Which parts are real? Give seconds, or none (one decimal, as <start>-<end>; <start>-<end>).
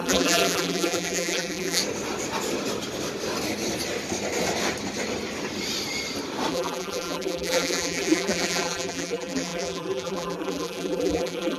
1.8-6.5